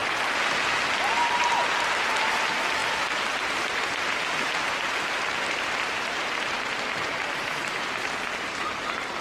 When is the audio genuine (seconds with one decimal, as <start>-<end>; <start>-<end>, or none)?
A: 0.0-2.3